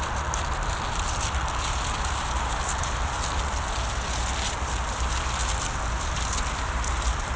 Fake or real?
real